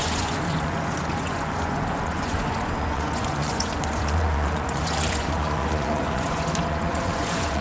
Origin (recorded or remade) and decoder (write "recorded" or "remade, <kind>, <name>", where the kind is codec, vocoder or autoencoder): remade, vocoder, Vocos